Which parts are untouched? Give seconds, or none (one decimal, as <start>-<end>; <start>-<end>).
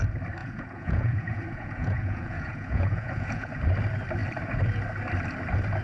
0.0-0.4; 3.5-5.8